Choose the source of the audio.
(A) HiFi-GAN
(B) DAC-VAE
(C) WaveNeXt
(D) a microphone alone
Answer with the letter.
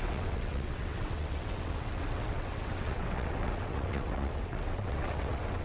C